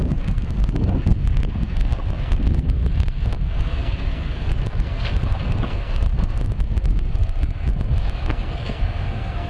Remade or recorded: remade